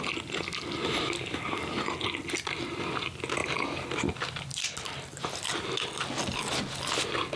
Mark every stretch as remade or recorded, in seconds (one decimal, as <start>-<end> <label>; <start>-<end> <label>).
0.0-7.4 recorded